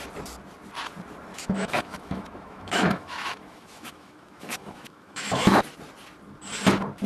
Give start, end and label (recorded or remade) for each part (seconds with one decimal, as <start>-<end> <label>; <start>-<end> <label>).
0.0-1.3 recorded; 1.3-5.6 remade; 5.6-7.1 recorded